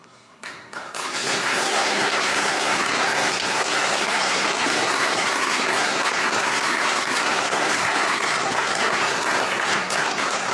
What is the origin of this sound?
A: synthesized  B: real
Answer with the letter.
A